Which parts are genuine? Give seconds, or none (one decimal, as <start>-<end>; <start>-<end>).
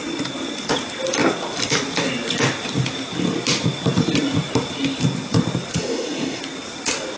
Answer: 0.0-5.7; 6.4-7.2